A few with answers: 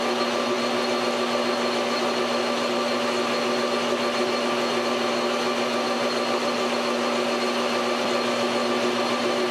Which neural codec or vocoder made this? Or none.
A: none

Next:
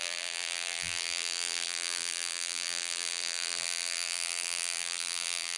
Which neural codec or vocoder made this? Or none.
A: vocoder, BigVGAN v2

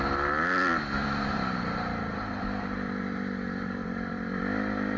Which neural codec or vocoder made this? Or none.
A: vocoder, BigVGAN v2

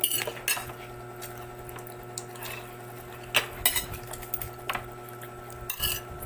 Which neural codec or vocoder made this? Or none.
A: none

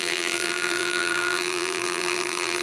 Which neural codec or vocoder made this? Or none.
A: vocoder, BigVGAN v2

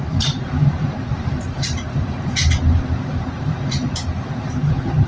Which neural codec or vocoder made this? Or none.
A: vocoder, BigVGAN v2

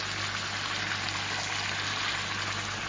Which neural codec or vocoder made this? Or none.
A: none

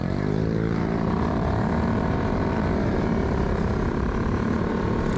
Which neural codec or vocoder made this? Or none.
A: vocoder, BigVGAN v2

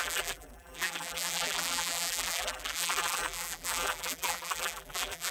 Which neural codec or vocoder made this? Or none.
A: vocoder, BigVGAN v2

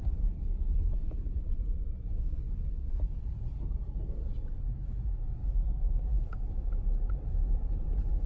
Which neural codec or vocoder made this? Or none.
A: vocoder, BigVGAN v2